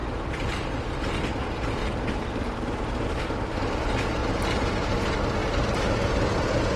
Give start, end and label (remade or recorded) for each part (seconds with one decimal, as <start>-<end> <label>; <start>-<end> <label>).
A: 0.0-1.8 recorded; 1.8-3.2 remade; 3.2-4.2 recorded; 4.2-4.9 remade; 4.9-5.4 recorded; 5.4-6.1 remade; 6.1-6.8 recorded